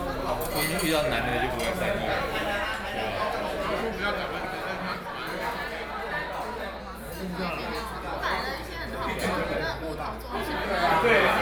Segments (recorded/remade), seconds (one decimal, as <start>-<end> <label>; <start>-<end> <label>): 0.0-11.4 recorded